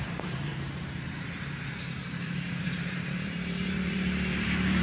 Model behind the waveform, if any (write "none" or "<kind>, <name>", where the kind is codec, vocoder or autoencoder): vocoder, BigVGAN v2